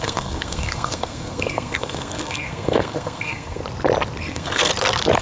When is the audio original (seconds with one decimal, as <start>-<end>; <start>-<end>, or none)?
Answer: 3.6-4.2; 4.7-5.2